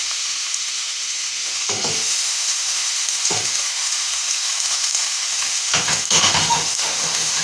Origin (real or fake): fake